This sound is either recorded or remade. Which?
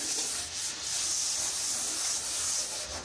recorded